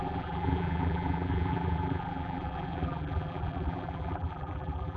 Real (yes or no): no